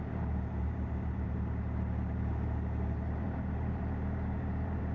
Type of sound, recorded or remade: remade